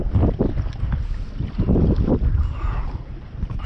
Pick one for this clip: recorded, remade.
recorded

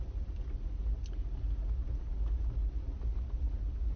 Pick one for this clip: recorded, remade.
recorded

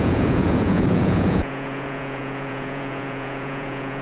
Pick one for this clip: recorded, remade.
remade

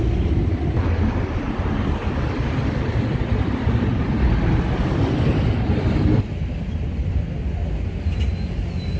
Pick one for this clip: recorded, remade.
recorded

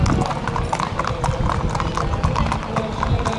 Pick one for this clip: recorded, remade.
recorded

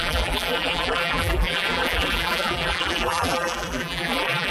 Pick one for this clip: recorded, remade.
remade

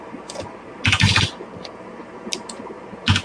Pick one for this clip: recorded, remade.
recorded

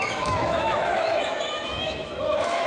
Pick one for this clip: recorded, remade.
remade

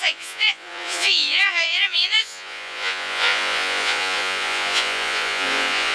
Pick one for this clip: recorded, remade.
remade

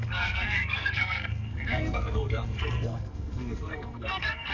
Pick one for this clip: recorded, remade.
remade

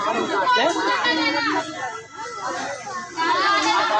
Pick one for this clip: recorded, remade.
recorded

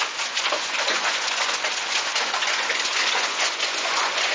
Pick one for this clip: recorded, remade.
remade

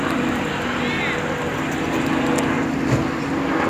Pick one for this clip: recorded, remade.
remade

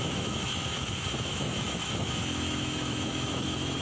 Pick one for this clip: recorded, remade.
remade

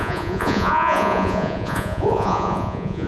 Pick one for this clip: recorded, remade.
remade